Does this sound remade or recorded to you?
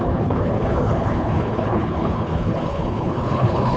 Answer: remade